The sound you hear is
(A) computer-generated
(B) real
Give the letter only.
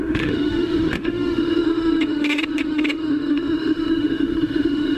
A